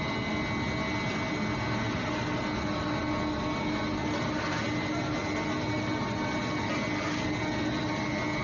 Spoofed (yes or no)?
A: no